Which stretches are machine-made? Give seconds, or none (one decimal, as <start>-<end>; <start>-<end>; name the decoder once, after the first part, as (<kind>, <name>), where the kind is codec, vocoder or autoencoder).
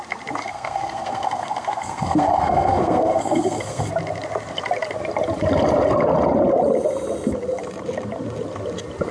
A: 0.4-3.9 (codec, SNAC)